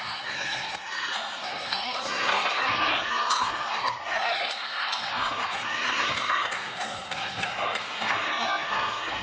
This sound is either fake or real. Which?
fake